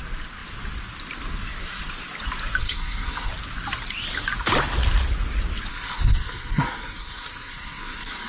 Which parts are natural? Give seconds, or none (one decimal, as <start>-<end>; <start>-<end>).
0.0-2.6; 3.3-5.7